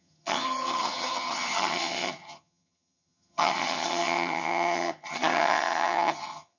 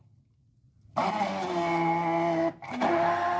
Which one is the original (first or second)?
second